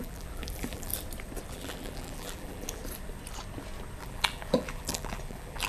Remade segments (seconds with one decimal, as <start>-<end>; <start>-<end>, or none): 0.0-0.9; 1.5-2.8; 4.0-5.7